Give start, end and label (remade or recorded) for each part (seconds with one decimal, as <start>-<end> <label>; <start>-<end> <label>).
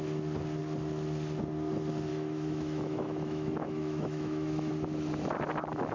0.0-2.1 recorded; 2.1-4.7 remade; 4.7-5.9 recorded